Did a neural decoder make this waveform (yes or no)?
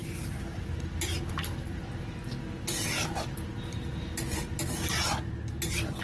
no